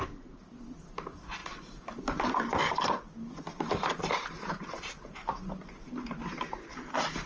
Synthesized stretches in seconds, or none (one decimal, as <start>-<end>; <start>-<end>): none

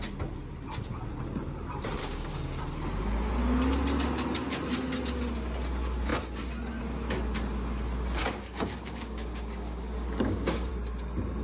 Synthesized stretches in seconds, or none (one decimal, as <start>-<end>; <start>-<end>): 2.0-2.6; 8.2-10.7